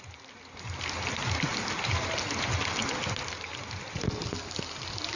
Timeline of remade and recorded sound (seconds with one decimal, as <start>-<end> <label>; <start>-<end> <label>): 0.0-5.2 recorded